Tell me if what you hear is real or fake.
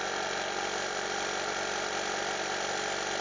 real